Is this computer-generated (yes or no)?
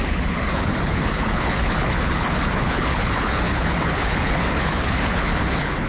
yes